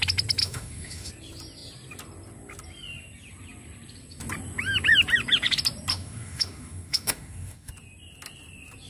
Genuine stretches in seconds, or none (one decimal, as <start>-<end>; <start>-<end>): 0.0-0.4; 1.1-5.9; 7.7-8.9